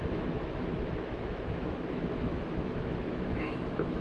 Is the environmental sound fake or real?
fake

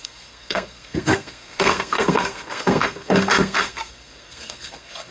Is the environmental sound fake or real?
fake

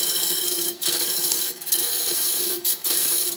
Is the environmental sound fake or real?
fake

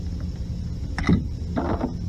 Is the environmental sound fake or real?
real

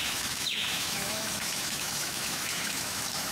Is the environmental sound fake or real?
fake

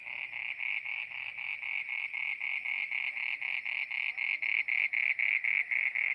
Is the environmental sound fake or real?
real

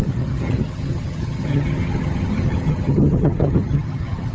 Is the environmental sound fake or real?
fake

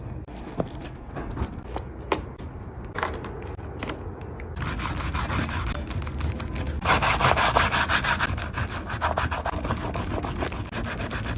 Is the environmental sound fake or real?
real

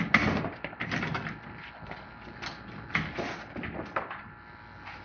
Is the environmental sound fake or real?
real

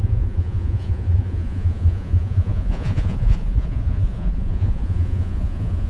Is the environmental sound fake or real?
fake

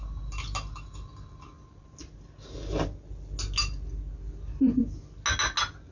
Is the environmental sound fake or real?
real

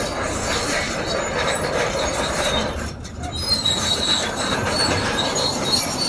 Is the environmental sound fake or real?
real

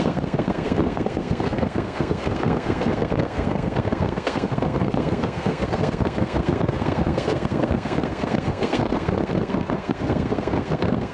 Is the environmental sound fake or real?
fake